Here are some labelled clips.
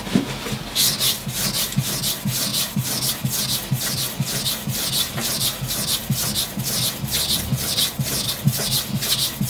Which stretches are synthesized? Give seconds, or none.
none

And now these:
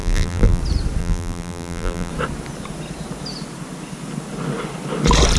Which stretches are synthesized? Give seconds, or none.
0.0-0.6 (vocoder, BigVGAN v2); 1.0-2.1

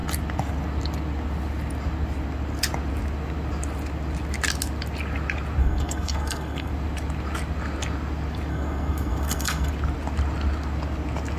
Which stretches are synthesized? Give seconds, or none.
5.6-6.7 (codec, SNAC); 8.5-9.7

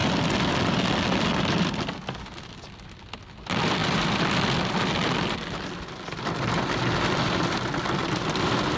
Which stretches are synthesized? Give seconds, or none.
8.0-8.8 (vocoder, BigVGAN v2)

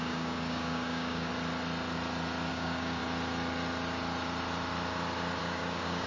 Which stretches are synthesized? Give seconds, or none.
0.0-1.3 (codec, DAC); 2.5-3.0; 5.4-6.1

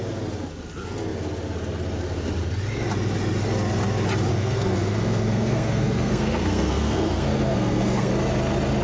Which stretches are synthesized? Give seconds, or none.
4.3-8.1 (codec, SNAC)

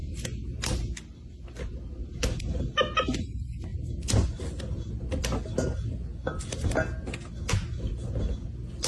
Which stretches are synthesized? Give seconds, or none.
none